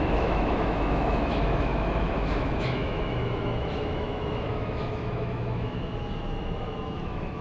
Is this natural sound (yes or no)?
no